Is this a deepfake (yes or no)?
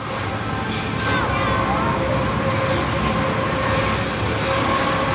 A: no